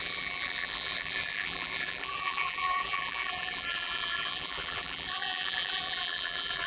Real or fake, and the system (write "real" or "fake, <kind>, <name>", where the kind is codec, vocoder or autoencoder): fake, vocoder, BigVGAN v2